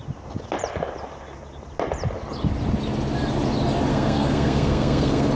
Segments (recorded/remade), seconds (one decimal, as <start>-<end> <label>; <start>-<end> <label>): 0.0-3.9 recorded; 3.9-5.3 remade